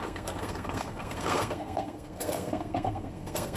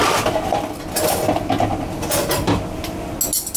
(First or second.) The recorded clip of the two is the second